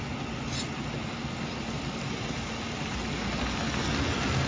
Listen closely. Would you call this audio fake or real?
real